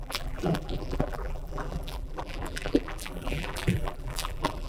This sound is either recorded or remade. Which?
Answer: remade